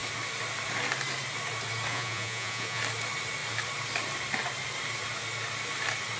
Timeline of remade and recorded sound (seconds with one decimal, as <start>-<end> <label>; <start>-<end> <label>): 0.0-1.9 recorded; 1.9-2.8 remade; 2.8-6.2 recorded